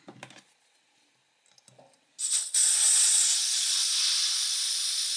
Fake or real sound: real